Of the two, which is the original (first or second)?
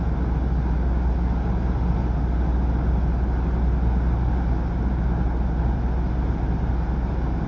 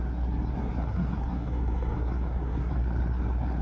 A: first